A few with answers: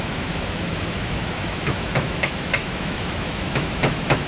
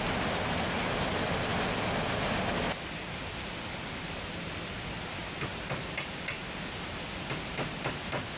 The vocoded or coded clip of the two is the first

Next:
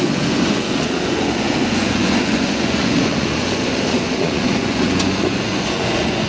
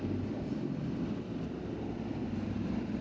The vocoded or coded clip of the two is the first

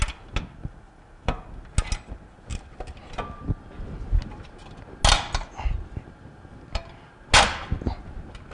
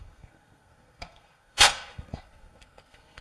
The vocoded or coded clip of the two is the second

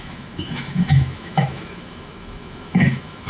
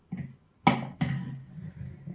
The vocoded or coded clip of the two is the first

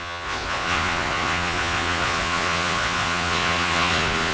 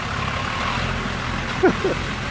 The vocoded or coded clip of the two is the first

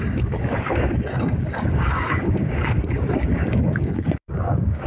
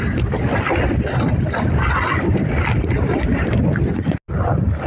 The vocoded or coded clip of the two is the first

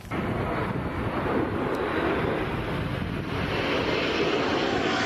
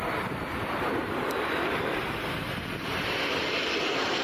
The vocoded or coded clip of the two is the second